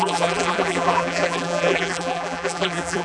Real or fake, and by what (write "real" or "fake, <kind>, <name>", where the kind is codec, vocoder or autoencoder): fake, vocoder, BigVGAN v2